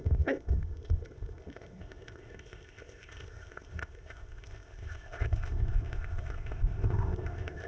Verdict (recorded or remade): remade